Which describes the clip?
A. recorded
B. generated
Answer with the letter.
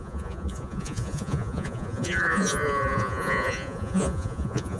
B